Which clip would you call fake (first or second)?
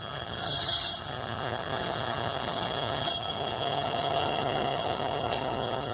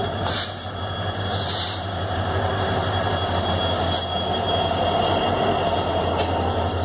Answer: first